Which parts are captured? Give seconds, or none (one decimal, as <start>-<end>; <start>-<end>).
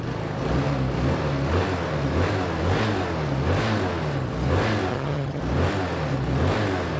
0.0-4.9; 5.4-7.0